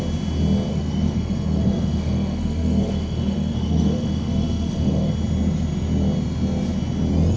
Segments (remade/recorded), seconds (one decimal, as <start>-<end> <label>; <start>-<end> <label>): 0.0-0.7 recorded; 0.7-5.1 remade; 5.1-7.4 recorded